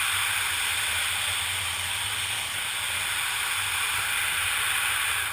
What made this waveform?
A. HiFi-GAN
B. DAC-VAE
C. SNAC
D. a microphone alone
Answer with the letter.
D